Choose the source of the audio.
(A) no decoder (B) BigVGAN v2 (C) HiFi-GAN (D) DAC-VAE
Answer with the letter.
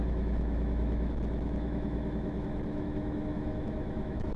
D